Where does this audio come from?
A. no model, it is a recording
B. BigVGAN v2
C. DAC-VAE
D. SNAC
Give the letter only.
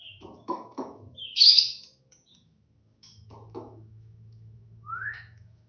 C